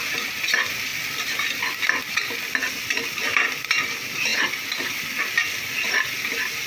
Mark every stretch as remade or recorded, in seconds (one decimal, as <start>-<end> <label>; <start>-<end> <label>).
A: 0.0-0.9 remade; 0.9-3.1 recorded; 3.1-4.3 remade; 4.3-6.7 recorded